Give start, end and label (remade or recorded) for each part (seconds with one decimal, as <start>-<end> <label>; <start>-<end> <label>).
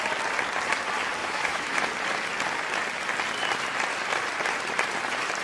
0.0-1.2 recorded; 1.2-1.8 remade; 1.8-5.4 recorded